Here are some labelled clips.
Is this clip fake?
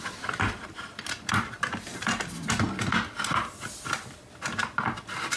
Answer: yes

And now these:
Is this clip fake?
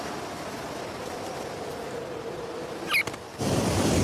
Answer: no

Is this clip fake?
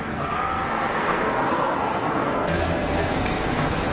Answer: yes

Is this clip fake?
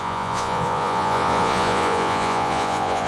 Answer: yes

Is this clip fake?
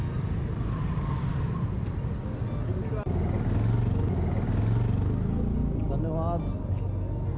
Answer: no